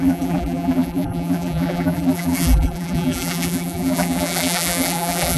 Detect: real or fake fake